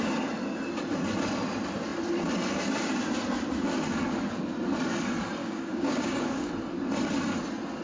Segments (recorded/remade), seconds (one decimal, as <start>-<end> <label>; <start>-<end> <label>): 0.0-5.4 recorded; 5.4-6.5 remade; 6.5-7.8 recorded

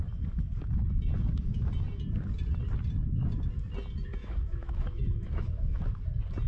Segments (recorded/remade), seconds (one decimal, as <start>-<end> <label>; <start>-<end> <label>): 0.0-4.2 recorded; 4.2-5.8 remade; 5.8-6.5 recorded

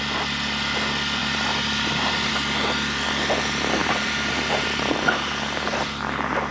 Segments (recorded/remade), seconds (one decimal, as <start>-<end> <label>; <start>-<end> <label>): 0.0-1.2 recorded; 1.2-2.3 remade; 2.3-3.8 recorded; 3.8-4.9 remade; 4.9-6.5 recorded

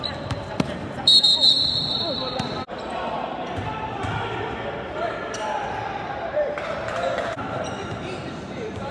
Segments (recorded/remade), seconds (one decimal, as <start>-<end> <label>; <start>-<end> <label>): 0.0-8.9 remade

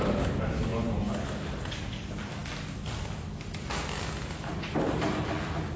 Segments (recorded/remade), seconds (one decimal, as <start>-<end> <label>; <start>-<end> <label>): 0.0-5.8 recorded

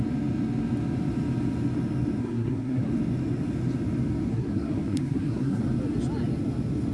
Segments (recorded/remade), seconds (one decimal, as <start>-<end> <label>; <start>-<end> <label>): 0.0-2.2 recorded; 2.2-2.9 remade; 2.9-4.3 recorded; 4.3-5.6 remade; 5.6-6.9 recorded